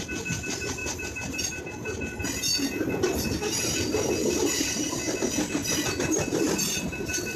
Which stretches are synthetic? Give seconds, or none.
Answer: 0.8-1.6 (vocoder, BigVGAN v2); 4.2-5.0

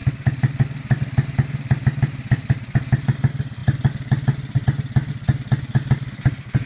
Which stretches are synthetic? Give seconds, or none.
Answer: none

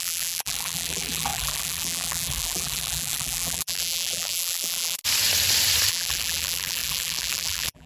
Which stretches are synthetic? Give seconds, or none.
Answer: 0.0-5.0 (vocoder, BigVGAN v2); 5.9-7.9

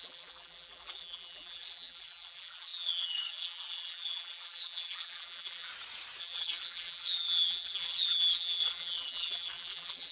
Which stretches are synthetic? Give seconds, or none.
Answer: 0.0-5.7 (vocoder, BigVGAN v2); 6.2-10.1

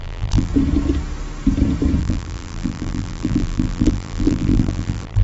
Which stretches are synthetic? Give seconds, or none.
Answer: 0.0-0.5 (vocoder, BigVGAN v2); 2.0-5.2

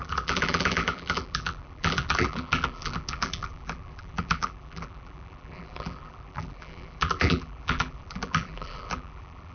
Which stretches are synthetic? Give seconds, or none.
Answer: 0.0-9.5 (vocoder, BigVGAN v2)

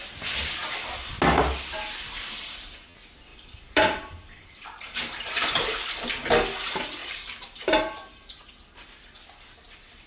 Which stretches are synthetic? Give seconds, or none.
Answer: 3.3-6.1 (vocoder, BigVGAN v2); 7.0-8.4

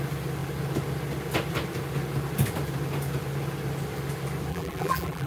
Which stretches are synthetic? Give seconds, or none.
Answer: 4.5-5.3 (vocoder, BigVGAN v2)